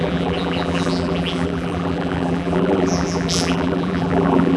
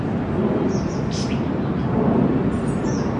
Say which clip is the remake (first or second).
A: first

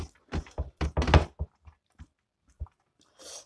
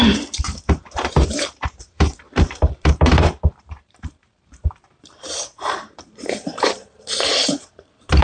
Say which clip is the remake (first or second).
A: second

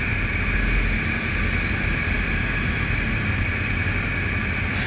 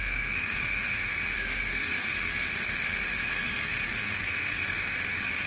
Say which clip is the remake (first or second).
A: second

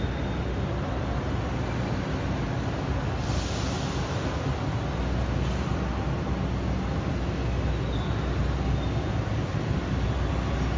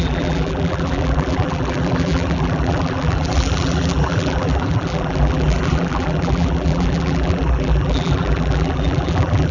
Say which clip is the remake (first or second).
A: second